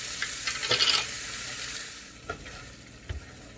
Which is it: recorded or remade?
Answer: recorded